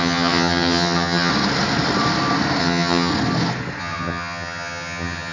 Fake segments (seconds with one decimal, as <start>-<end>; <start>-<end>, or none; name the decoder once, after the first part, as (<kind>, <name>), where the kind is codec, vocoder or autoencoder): 0.0-1.3 (vocoder, HiFi-GAN); 2.6-3.1; 3.8-5.3